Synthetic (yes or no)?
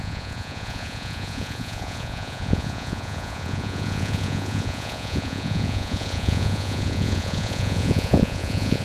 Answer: yes